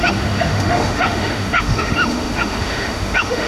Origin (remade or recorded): remade